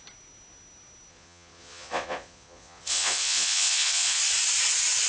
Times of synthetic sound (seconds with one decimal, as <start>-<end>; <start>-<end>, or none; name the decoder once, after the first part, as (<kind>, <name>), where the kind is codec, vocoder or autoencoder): 1.1-4.2 (vocoder, Vocos)

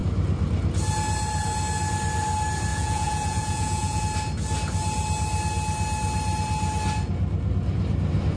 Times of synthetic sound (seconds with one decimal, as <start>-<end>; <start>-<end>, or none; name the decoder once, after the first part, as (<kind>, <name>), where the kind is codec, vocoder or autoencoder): 2.7-4.0 (vocoder, Vocos)

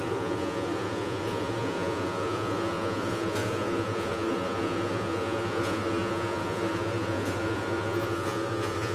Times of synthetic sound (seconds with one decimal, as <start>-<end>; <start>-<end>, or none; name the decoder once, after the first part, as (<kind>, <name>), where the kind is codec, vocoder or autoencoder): 0.0-8.9 (vocoder, Vocos)

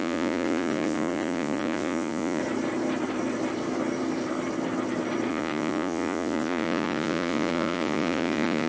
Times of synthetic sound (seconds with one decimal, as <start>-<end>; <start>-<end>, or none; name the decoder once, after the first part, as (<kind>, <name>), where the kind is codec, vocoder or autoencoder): 0.0-2.4 (vocoder, Vocos); 5.3-8.7